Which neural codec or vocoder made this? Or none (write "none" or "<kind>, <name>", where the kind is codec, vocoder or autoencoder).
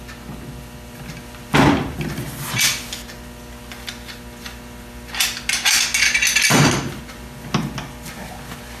none